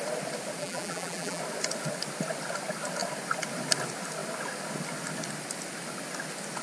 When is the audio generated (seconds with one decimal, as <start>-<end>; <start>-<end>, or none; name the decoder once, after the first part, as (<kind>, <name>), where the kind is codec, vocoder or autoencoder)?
0.6-1.4 (vocoder, BigVGAN v2)